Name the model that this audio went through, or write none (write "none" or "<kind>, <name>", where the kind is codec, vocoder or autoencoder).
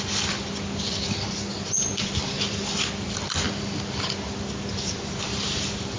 none